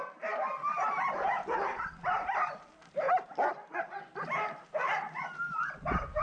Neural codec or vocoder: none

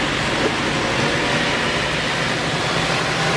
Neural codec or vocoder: none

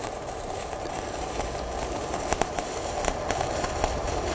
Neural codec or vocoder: vocoder, BigVGAN v2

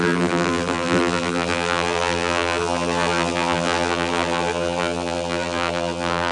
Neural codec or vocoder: vocoder, BigVGAN v2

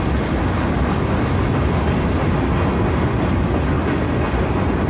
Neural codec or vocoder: none